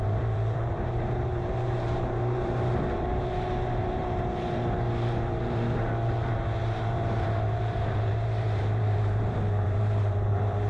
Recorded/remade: remade